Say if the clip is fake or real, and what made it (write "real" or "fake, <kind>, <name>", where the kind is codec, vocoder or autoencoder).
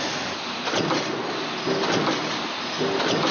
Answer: real